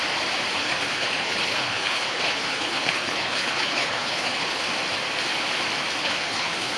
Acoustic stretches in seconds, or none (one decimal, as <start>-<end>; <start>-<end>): 0.0-0.6; 4.7-6.0